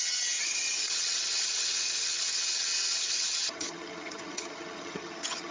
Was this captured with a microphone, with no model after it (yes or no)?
no